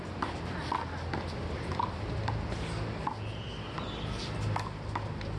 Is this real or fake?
real